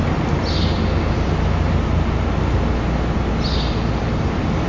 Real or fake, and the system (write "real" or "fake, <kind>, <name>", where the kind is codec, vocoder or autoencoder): real